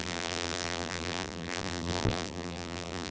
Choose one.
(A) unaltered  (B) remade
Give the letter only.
B